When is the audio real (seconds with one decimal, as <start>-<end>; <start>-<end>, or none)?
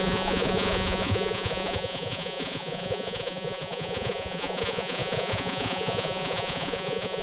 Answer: none